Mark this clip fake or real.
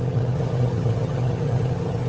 fake